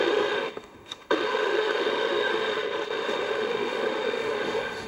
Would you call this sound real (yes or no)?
no